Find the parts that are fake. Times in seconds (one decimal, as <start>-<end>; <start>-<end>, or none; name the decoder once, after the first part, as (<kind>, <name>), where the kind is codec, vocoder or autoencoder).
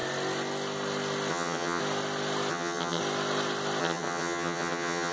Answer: 1.3-1.8 (vocoder, HiFi-GAN); 2.5-3.0; 3.8-5.1